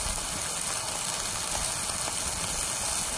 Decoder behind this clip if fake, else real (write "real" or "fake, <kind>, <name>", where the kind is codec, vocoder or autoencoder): real